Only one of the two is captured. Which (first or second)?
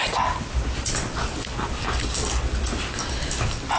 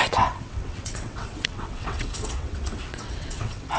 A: first